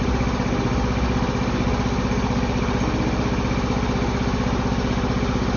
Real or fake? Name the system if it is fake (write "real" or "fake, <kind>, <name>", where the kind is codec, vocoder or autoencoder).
real